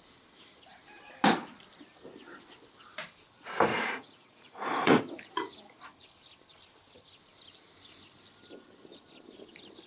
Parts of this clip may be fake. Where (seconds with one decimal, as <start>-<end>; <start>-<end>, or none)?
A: 3.7-5.0